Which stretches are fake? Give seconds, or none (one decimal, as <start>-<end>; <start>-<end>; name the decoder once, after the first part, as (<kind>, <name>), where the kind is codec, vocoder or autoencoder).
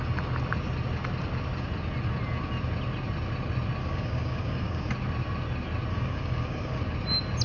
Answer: 3.8-4.9 (codec, DAC); 5.9-6.8